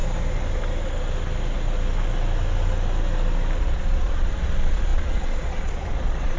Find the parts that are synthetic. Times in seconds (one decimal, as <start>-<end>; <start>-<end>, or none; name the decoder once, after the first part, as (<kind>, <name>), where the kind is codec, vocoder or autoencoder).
3.6-6.4 (vocoder, Vocos)